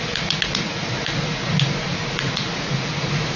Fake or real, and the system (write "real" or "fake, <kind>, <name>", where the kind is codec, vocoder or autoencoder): fake, vocoder, Vocos